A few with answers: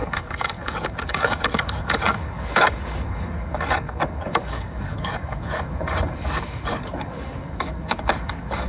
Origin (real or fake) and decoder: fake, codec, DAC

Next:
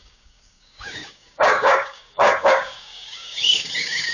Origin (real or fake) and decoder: fake, codec, DAC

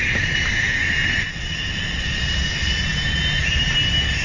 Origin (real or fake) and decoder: real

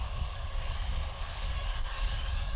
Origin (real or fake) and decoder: fake, codec, DAC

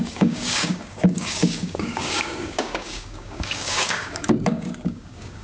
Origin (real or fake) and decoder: fake, codec, DAC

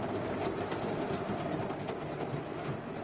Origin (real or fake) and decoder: real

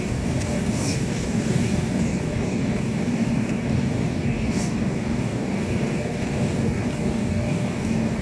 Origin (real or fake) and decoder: fake, codec, DAC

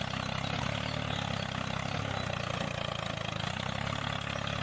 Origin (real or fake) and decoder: real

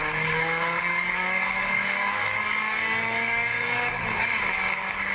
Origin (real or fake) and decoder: fake, codec, DAC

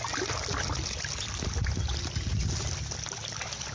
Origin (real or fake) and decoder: real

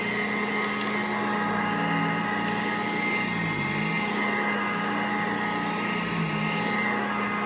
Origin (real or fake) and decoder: real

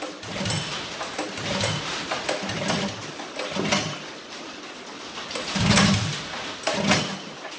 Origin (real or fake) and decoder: real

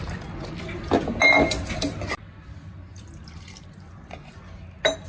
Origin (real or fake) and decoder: real